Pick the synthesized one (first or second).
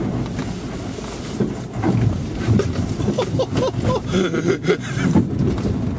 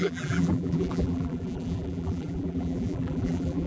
second